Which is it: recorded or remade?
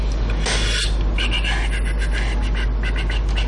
recorded